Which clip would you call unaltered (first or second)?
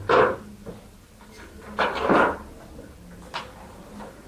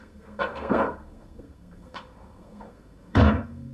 first